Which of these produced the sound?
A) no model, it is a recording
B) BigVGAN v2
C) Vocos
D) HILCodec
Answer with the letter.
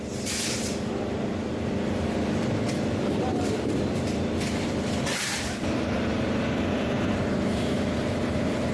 B